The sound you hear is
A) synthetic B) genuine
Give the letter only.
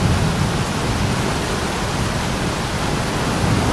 B